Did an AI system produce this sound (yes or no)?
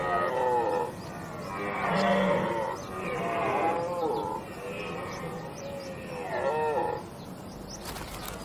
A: no